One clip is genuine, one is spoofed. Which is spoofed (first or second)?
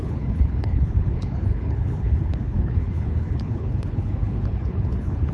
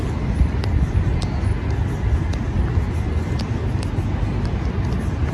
first